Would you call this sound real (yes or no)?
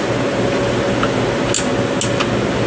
yes